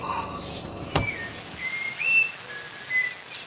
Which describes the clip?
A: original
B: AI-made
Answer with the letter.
A